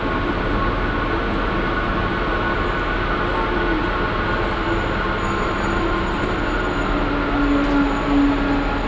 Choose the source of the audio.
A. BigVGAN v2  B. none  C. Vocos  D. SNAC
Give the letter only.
B